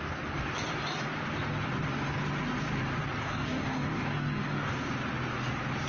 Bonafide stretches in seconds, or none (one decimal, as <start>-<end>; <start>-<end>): 0.0-3.2; 4.7-5.9